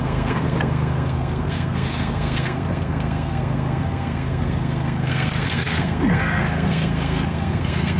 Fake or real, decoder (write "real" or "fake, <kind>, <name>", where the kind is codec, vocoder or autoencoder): fake, codec, SNAC